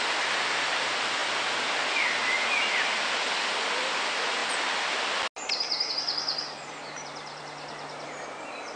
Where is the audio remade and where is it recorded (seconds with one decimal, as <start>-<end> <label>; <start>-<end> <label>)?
0.0-6.6 recorded; 6.6-7.4 remade; 7.4-8.8 recorded